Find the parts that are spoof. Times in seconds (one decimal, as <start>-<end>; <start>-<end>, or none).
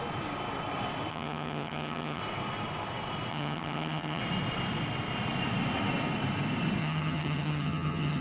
1.1-2.2; 3.3-4.2; 6.8-8.2